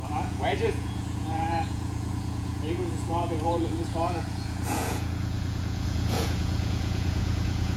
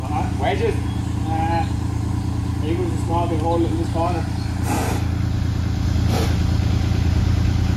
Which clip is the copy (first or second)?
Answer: first